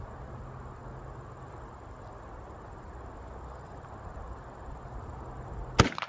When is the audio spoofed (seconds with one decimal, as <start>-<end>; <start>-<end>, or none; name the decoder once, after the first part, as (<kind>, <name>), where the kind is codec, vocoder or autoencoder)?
none